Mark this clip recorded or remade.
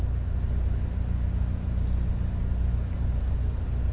recorded